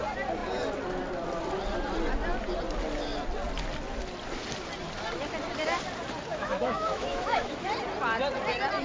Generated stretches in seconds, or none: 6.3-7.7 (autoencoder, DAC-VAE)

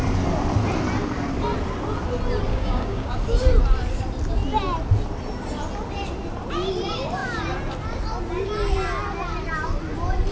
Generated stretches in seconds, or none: 2.5-3.1 (codec, DAC)

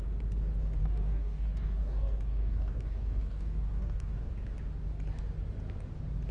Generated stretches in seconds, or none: 0.8-4.3 (codec, DAC)